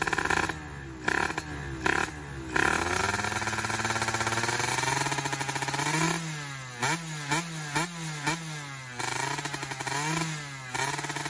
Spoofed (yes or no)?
no